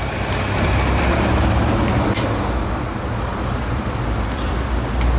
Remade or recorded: recorded